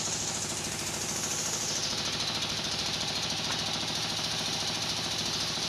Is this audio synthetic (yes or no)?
yes